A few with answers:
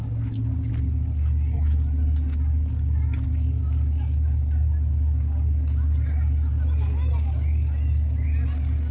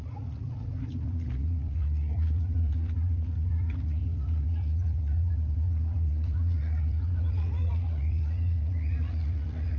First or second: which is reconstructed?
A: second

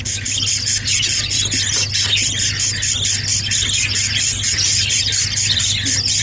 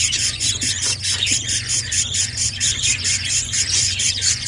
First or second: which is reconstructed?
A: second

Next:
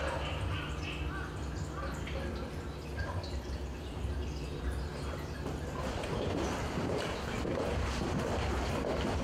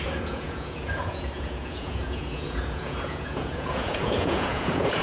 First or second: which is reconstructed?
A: second